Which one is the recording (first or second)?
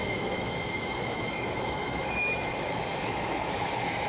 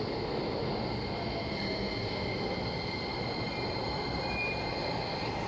second